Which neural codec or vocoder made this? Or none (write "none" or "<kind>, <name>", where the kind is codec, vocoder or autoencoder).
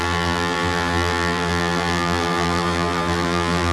vocoder, BigVGAN v2